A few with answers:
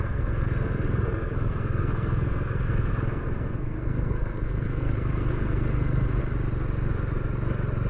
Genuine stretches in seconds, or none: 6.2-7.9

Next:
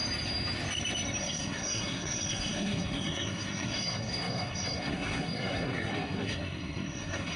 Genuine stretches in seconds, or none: 0.0-1.2